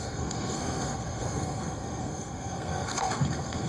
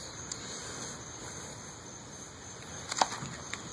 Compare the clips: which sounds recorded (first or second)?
second